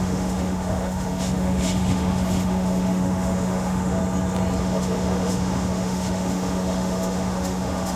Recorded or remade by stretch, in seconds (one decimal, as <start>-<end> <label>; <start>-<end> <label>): 0.0-4.0 remade; 4.0-4.6 recorded; 4.6-8.0 remade